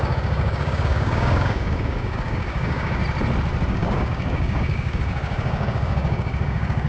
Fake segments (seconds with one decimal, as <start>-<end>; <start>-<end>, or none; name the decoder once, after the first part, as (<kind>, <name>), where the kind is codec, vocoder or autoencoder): 0.0-3.0 (codec, DAC); 3.7-6.9